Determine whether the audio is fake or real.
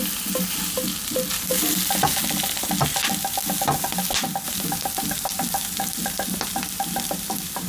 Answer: real